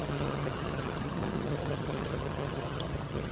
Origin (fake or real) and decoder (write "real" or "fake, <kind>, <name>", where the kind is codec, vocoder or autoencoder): fake, vocoder, HiFi-GAN